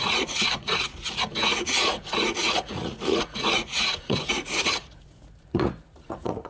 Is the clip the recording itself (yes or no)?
no